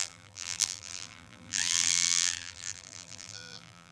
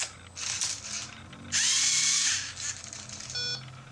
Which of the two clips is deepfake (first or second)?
first